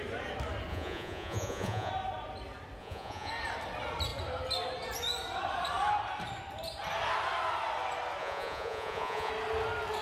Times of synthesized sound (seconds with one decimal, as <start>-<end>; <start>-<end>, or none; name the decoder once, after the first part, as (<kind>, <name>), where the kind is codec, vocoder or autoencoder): 0.7-1.9 (vocoder, Vocos); 2.8-3.3; 8.2-9.3